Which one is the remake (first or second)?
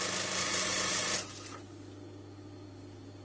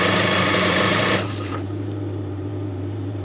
second